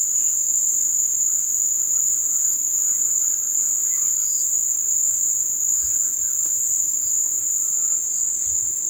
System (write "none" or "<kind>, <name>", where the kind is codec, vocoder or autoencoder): none